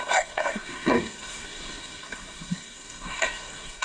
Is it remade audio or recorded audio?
remade